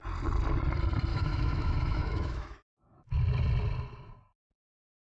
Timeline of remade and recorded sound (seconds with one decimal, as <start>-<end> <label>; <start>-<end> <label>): 0.0-1.1 recorded; 1.1-3.2 remade; 3.2-5.2 recorded